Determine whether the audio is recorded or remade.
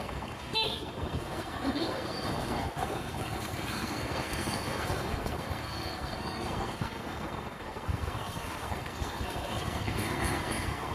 remade